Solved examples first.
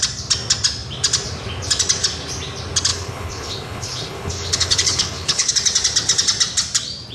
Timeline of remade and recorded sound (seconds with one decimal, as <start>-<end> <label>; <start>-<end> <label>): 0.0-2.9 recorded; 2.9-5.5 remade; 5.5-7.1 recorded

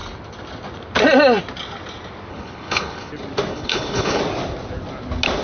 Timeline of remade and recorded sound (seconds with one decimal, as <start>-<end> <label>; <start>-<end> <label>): 0.0-2.3 recorded; 2.3-3.1 remade; 3.1-3.5 recorded; 3.5-4.2 remade; 4.2-5.4 recorded

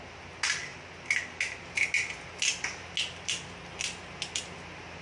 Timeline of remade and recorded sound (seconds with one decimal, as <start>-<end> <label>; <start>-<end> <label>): 0.0-5.0 recorded

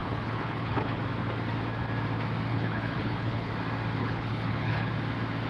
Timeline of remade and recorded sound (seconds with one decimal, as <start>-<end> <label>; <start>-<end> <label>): 0.0-1.0 remade; 1.0-2.5 recorded; 2.5-3.5 remade; 3.5-4.0 recorded; 4.0-4.9 remade; 4.9-5.5 recorded

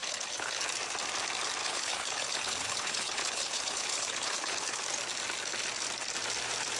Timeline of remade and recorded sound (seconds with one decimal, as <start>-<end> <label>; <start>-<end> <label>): 0.0-0.6 remade; 0.6-1.6 recorded; 1.6-4.8 remade; 4.8-6.8 recorded

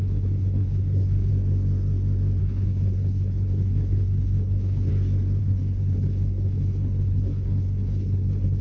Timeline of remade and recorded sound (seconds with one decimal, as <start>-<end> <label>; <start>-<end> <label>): 0.0-1.3 remade; 1.3-2.4 recorded; 2.4-4.9 remade; 4.9-5.4 recorded; 5.4-8.6 remade

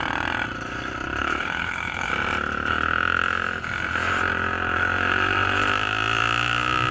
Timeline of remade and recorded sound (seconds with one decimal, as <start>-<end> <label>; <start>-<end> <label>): 0.0-1.2 recorded; 1.2-2.1 remade; 2.1-6.9 recorded

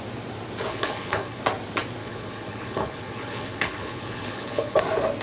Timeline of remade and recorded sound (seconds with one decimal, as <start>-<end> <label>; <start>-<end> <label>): 0.0-0.7 recorded; 0.7-1.4 remade; 1.4-2.0 recorded; 2.0-4.8 remade; 4.8-5.2 recorded